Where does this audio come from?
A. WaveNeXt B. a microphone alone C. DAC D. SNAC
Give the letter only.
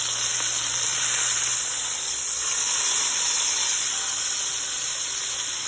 B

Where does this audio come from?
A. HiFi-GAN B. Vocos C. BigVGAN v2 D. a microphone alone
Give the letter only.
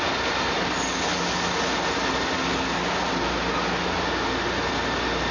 D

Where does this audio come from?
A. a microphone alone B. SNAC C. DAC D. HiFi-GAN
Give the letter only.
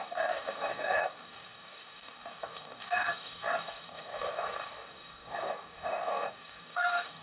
C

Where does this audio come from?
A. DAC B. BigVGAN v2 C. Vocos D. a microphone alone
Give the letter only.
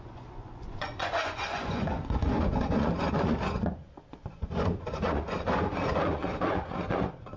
C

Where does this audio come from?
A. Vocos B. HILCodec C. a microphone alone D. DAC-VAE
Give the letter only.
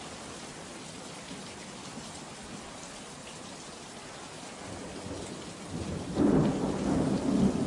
C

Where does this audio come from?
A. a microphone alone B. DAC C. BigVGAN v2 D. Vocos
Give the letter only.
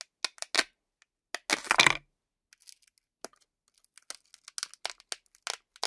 A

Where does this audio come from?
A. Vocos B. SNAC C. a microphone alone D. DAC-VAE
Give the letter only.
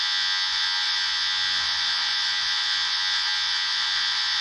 A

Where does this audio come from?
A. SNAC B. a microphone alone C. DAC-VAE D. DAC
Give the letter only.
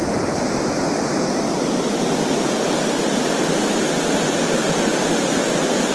B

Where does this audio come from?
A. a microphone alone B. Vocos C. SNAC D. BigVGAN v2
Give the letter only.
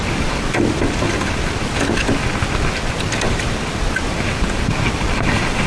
A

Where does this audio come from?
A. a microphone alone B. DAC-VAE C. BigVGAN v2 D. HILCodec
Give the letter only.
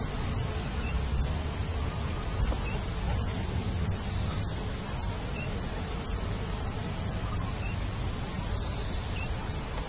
C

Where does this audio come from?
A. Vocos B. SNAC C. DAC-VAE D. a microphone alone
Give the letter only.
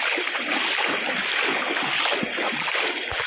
D